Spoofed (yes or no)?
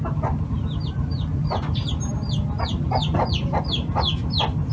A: no